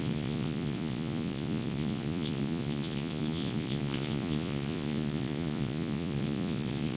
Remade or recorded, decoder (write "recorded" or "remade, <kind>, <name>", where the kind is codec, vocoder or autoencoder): remade, vocoder, Vocos